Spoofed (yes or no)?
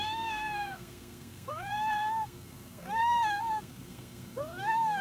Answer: yes